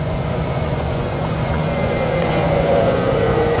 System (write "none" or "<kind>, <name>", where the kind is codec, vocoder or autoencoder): vocoder, Vocos